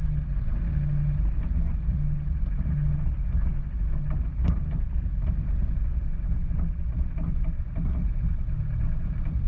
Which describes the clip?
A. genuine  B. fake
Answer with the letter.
A